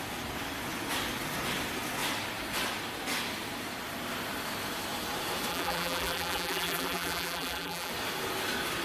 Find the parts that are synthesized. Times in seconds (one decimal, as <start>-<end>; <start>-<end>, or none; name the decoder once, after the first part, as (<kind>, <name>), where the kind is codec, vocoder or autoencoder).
5.5-7.9 (vocoder, BigVGAN v2)